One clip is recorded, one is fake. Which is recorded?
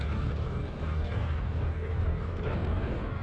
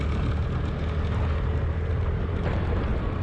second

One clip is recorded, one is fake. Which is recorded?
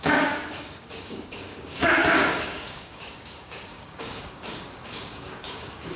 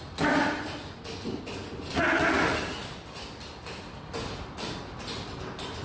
second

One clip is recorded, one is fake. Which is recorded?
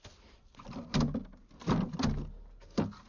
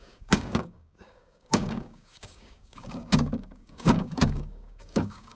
first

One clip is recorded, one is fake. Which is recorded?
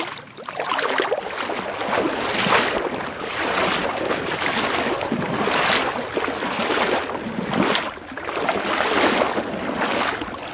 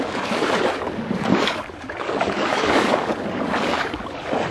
first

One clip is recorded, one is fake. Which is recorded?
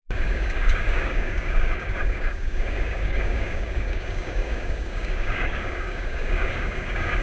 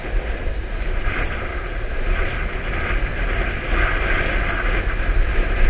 second